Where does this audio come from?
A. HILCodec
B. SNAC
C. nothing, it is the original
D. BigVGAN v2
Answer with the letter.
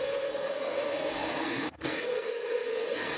B